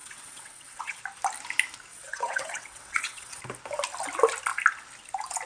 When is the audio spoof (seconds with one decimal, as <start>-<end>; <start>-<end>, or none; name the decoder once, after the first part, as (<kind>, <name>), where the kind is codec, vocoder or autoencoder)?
0.0-1.0 (vocoder, WaveNeXt); 1.9-3.4